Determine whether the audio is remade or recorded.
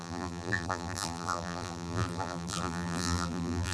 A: remade